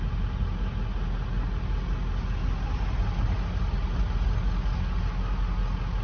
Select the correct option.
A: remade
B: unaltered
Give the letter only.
B